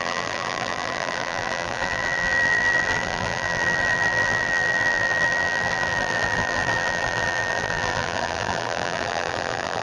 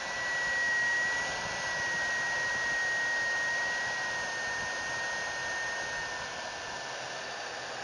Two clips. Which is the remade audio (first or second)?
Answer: first